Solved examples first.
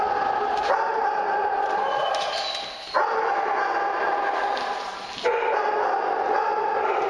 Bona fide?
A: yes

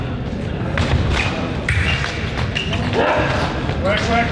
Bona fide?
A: yes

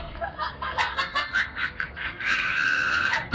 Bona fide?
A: no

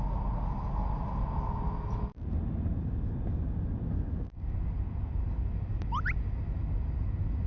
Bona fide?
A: yes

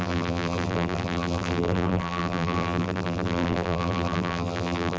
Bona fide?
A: no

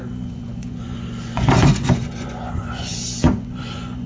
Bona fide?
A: no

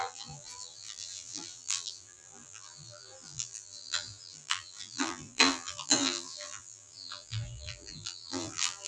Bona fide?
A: no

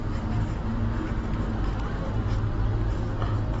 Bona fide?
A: yes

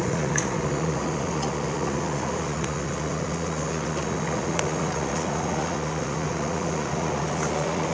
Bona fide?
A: no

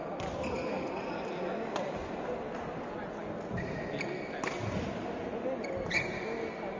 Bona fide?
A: yes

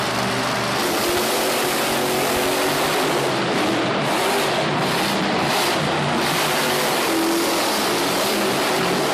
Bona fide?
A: yes